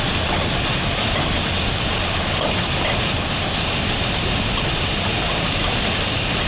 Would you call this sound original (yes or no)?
yes